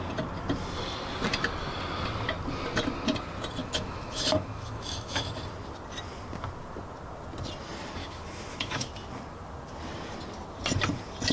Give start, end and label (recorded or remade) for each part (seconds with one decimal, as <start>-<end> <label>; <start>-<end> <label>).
0.0-3.6 recorded; 3.6-5.4 remade; 5.4-8.0 recorded; 8.0-8.9 remade; 8.9-11.3 recorded